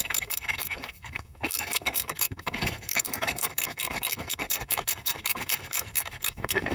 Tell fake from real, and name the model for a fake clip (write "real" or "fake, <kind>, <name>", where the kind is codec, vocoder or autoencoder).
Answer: fake, codec, SNAC